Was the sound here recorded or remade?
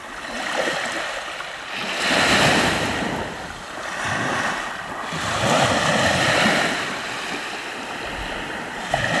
recorded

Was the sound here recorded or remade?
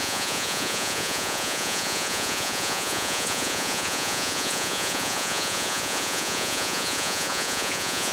remade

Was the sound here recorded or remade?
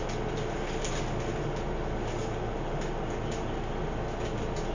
recorded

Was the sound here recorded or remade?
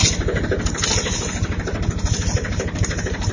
recorded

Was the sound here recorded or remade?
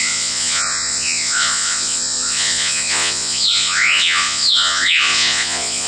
remade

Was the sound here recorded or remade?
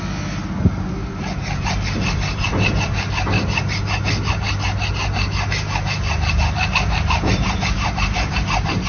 recorded